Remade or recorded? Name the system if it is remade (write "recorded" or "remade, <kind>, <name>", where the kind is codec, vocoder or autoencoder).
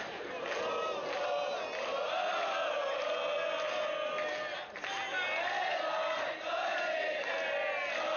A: recorded